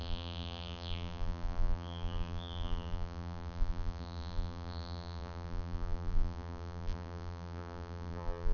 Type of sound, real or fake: fake